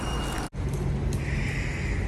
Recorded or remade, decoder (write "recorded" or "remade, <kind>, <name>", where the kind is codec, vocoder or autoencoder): recorded